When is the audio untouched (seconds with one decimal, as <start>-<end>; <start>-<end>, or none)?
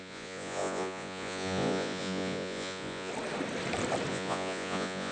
3.1-4.1